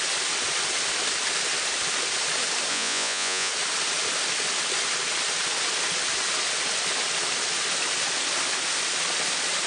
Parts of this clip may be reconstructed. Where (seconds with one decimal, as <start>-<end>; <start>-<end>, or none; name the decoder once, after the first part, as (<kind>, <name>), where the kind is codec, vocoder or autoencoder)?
2.7-3.5 (vocoder, Vocos)